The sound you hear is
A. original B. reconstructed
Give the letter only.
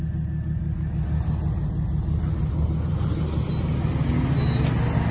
A